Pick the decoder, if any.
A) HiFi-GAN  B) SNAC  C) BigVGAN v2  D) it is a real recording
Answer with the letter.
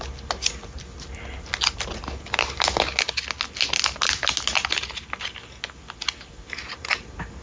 D